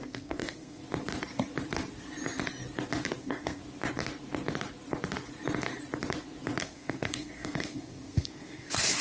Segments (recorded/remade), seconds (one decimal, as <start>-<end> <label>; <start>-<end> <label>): 0.0-0.8 remade; 0.8-3.2 recorded; 3.2-3.6 remade; 3.6-6.6 recorded; 6.6-9.0 remade